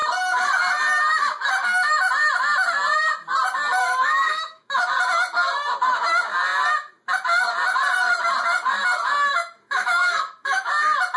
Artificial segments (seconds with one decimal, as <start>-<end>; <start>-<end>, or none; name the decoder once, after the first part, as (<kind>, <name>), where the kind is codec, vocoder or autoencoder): 3.8-4.9 (autoencoder, DAC-VAE); 9.3-10.7